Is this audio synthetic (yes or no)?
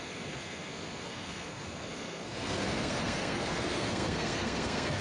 yes